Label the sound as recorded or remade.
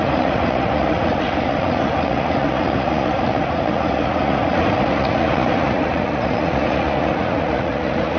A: remade